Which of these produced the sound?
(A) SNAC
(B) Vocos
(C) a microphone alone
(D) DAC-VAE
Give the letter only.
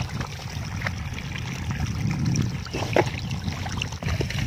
C